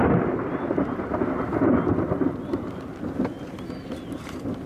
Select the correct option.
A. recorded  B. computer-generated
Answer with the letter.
A